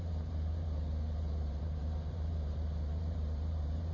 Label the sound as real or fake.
fake